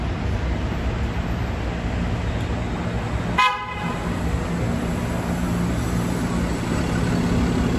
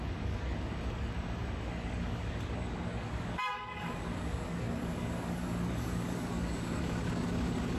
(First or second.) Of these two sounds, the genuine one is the first